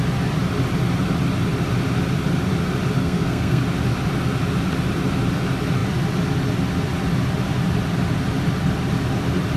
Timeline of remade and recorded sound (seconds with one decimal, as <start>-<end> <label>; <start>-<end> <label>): 0.0-3.0 recorded; 3.0-3.6 remade; 3.6-9.6 recorded